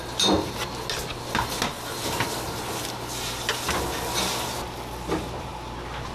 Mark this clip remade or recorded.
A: recorded